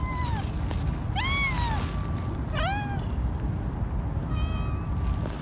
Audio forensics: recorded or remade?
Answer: recorded